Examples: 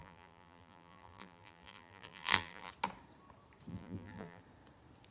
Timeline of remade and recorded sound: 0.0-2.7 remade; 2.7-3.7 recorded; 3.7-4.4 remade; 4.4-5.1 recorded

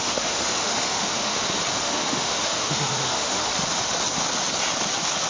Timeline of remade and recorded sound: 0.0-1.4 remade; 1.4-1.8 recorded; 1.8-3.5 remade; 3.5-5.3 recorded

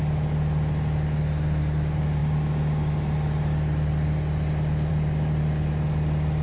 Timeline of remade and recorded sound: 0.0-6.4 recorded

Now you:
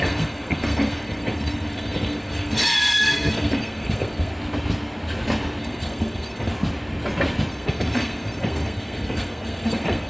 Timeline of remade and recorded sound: 0.0-4.3 remade; 4.3-5.6 recorded; 5.6-6.5 remade; 6.5-7.5 recorded; 7.5-10.1 remade

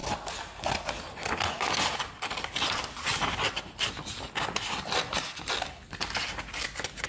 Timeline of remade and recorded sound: 0.0-7.1 recorded